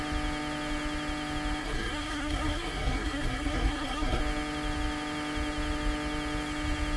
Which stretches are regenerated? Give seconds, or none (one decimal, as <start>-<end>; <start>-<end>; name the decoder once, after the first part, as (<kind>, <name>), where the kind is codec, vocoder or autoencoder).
1.6-4.2 (codec, SNAC)